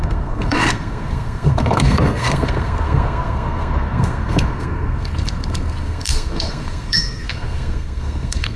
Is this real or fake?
fake